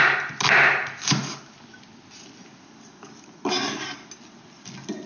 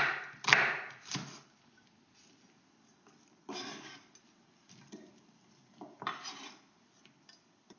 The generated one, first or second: second